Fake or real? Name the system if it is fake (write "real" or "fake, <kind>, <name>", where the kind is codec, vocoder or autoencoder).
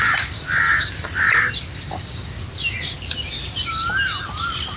real